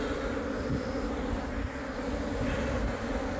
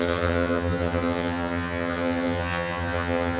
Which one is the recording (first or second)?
first